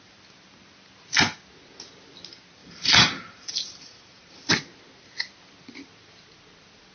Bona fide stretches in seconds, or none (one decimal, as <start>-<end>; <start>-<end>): 0.0-2.6; 4.5-6.9